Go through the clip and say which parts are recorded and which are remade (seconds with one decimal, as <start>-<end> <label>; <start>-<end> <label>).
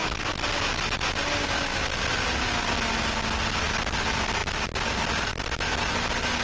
0.0-6.4 recorded